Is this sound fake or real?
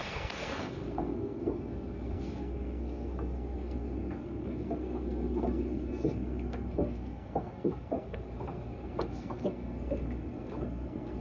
fake